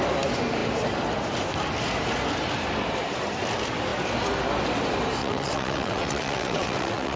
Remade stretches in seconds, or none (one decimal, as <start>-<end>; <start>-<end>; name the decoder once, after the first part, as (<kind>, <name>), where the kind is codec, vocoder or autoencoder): 5.2-7.2 (vocoder, WaveNeXt)